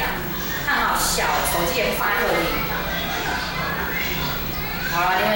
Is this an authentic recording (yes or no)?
yes